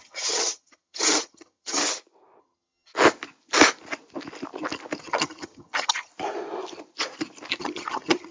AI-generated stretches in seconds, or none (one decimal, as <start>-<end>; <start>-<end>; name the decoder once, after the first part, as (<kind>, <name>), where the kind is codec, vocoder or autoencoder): 0.0-1.8 (vocoder, HiFi-GAN); 2.4-2.9; 5.0-6.1; 7.6-8.3